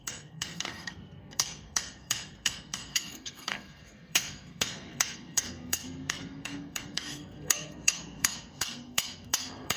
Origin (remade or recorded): remade